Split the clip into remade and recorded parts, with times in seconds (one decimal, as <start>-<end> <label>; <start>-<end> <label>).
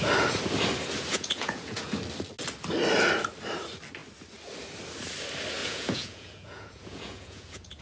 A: 0.0-1.1 recorded; 1.1-2.0 remade; 2.0-5.6 recorded; 5.6-7.8 remade